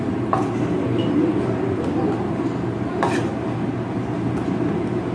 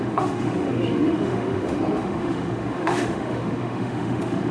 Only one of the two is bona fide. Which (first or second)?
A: first